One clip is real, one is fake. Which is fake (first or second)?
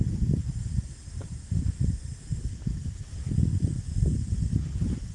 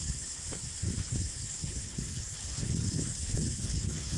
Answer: second